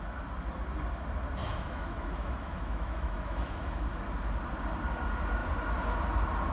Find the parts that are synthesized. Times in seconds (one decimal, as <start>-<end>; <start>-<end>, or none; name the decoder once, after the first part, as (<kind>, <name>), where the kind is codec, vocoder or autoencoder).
1.4-4.0 (autoencoder, DAC-VAE)